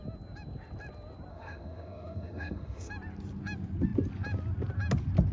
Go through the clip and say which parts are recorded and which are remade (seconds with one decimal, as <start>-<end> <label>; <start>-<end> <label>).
0.0-1.3 recorded; 1.3-2.9 remade; 2.9-5.3 recorded